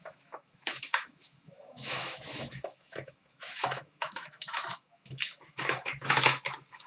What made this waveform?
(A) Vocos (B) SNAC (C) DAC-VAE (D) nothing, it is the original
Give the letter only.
C